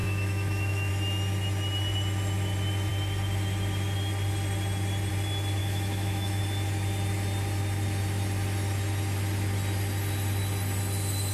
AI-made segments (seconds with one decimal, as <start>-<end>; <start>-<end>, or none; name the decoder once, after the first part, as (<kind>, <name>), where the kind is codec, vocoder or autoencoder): 0.0-0.9 (autoencoder, DAC-VAE); 5.6-6.4